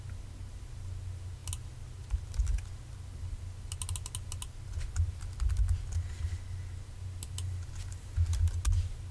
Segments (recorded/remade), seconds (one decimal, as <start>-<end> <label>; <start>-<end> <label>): 0.0-9.1 recorded